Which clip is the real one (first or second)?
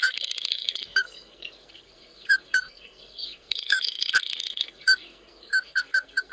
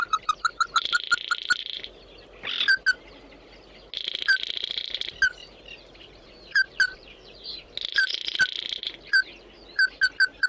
second